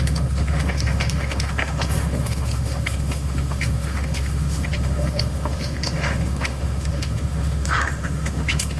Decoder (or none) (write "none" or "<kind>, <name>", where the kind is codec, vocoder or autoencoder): autoencoder, DAC-VAE